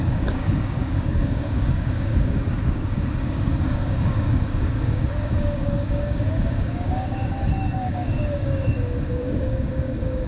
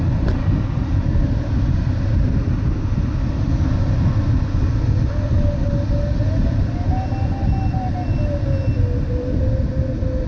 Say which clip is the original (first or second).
second